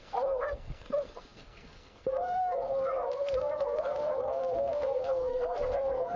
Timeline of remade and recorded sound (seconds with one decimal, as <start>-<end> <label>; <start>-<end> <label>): 0.0-6.2 remade